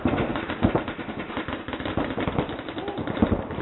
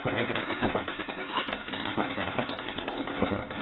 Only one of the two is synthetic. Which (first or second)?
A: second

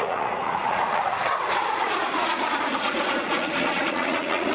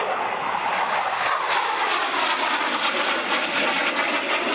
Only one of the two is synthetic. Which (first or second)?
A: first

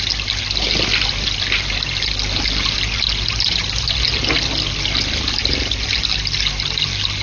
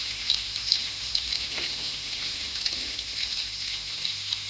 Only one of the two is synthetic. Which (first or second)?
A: second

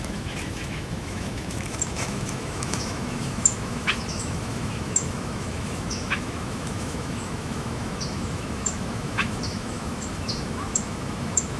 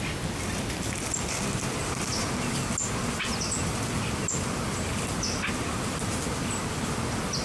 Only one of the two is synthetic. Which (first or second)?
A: first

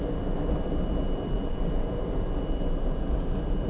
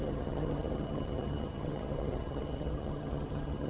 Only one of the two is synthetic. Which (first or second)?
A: second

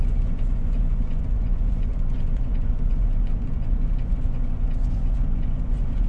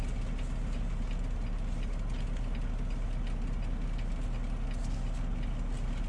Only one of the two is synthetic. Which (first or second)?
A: first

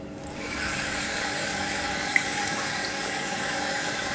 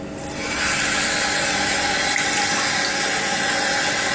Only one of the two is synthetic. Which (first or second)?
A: first